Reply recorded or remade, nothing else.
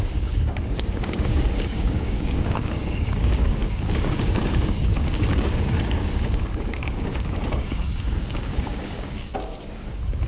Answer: remade